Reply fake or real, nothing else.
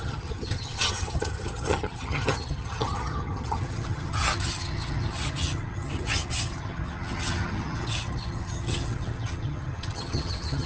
fake